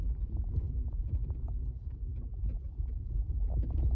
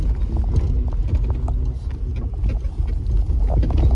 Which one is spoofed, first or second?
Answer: first